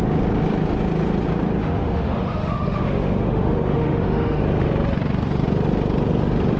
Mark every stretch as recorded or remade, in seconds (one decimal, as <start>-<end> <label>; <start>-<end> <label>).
0.0-1.6 recorded; 1.6-4.4 remade; 4.4-6.6 recorded